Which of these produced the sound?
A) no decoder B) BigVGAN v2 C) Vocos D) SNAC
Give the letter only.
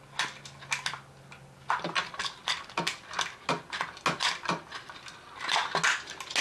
A